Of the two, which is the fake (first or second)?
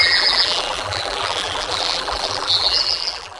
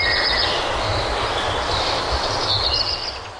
first